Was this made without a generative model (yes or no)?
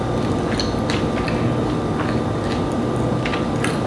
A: yes